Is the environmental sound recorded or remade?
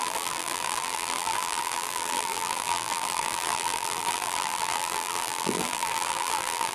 remade